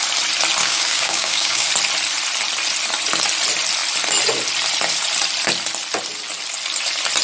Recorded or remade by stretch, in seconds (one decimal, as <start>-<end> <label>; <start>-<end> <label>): 0.0-0.6 recorded; 0.6-1.7 remade; 1.7-7.2 recorded